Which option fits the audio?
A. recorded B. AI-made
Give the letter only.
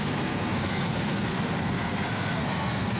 B